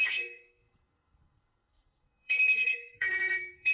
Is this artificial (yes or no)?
yes